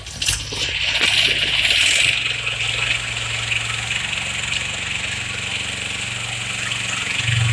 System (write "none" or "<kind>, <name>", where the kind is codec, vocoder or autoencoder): none